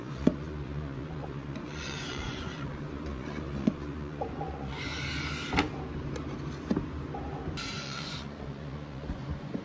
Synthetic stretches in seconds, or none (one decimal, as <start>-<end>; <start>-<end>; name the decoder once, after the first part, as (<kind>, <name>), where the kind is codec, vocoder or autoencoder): 0.0-4.9 (vocoder, Vocos); 7.7-9.6